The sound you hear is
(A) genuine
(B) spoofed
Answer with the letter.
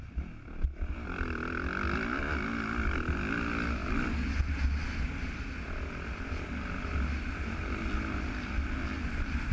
A